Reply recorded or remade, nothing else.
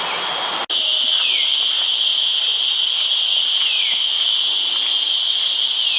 recorded